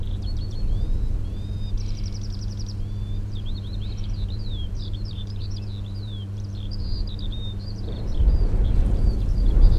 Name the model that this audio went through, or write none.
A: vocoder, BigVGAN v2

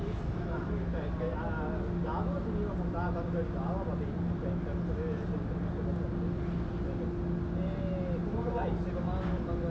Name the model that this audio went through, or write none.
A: none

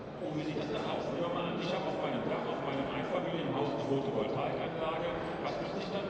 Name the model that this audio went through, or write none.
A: none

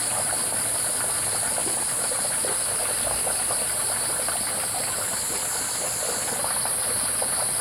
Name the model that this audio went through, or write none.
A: none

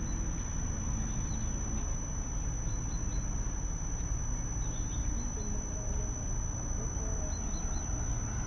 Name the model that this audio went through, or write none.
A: none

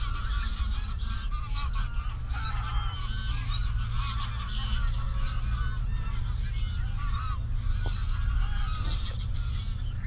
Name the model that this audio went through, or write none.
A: none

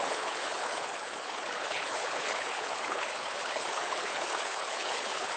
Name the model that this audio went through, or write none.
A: codec, HILCodec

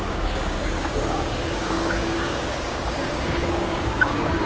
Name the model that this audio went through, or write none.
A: codec, DAC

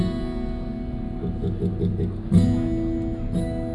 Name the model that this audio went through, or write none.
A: none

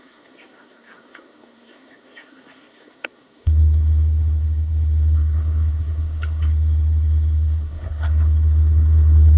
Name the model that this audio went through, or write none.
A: codec, SNAC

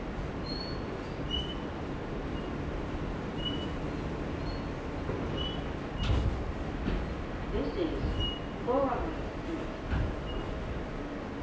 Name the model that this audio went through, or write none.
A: none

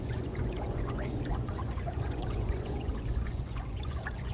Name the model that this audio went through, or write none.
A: vocoder, Vocos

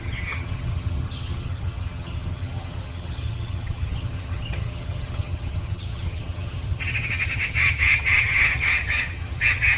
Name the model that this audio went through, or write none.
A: vocoder, HiFi-GAN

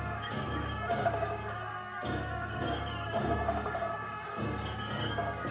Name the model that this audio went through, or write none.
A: codec, DAC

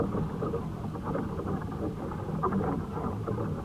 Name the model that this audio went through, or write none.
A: none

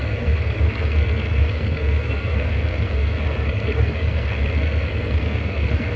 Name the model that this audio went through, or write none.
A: codec, SNAC